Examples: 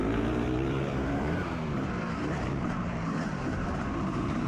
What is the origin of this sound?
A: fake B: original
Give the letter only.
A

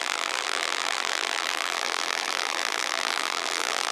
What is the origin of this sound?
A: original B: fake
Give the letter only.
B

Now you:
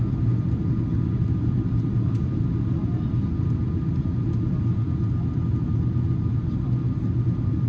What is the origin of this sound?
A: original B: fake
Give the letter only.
A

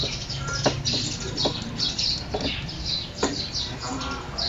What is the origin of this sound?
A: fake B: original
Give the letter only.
B